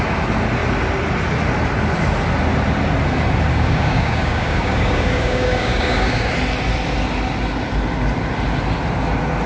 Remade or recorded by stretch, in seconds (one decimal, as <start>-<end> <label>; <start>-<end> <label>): 0.0-3.5 recorded; 3.5-6.3 remade; 6.3-9.5 recorded